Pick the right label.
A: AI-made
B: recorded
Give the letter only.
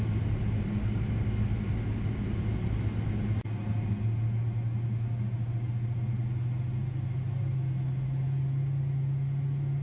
B